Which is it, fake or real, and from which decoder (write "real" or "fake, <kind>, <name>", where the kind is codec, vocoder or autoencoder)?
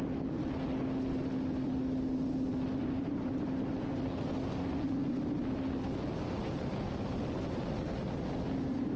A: real